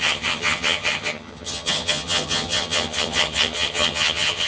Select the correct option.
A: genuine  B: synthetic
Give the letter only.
B